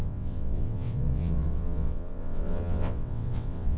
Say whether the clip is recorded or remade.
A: remade